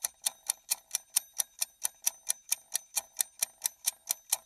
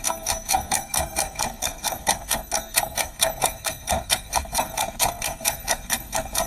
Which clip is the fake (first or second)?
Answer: second